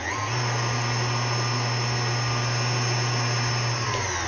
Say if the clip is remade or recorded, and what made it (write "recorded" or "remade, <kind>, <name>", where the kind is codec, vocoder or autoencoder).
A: recorded